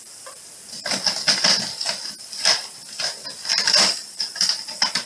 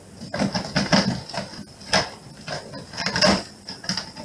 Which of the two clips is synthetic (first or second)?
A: first